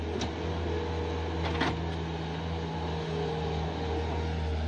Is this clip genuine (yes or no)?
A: yes